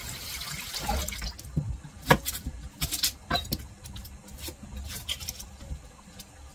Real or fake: real